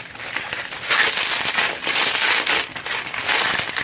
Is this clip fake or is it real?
real